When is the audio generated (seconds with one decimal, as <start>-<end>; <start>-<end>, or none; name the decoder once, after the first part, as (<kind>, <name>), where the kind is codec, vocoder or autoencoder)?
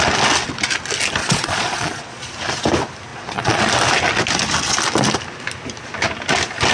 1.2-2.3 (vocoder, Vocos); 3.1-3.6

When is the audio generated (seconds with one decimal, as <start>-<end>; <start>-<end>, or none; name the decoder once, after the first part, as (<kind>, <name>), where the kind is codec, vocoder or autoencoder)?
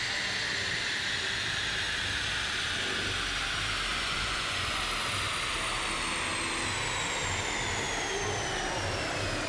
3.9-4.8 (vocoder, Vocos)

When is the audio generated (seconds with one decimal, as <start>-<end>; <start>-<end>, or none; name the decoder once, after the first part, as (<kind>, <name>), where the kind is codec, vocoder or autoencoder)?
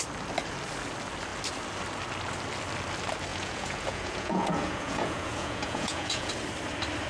3.3-6.3 (vocoder, Vocos)